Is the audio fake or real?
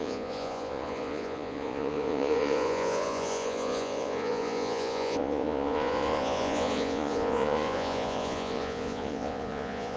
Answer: fake